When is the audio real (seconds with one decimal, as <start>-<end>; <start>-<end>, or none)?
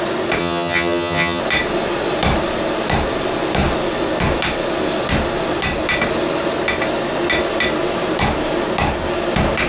0.0-0.4; 1.4-9.7